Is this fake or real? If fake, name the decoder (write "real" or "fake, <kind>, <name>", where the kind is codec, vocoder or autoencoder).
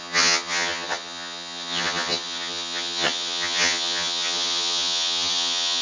fake, vocoder, HiFi-GAN